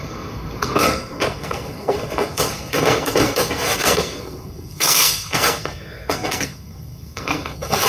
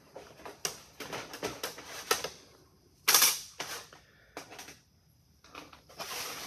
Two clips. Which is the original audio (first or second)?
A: second